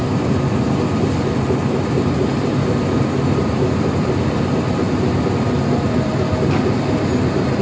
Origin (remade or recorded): recorded